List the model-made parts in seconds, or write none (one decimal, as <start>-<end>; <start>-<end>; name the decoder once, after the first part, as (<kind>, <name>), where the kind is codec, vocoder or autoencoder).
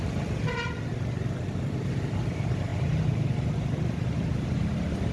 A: 0.0-0.9 (vocoder, BigVGAN v2); 1.5-5.1